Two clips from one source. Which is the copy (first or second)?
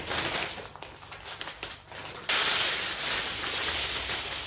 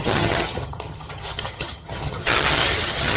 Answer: second